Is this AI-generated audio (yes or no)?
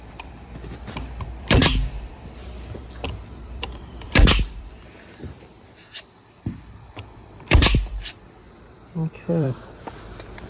yes